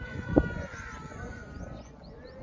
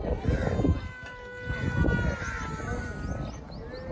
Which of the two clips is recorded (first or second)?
second